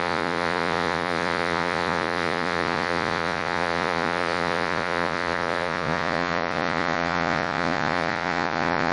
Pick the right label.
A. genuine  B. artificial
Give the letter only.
B